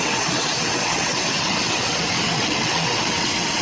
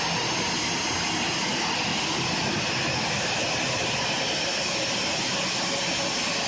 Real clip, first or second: second